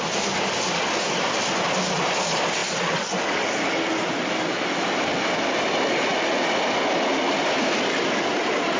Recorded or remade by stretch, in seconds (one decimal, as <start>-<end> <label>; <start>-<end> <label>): 0.0-8.8 recorded